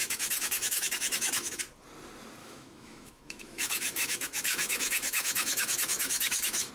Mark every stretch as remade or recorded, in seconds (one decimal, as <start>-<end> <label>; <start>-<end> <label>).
0.0-1.6 remade; 1.6-2.4 recorded; 2.4-6.7 remade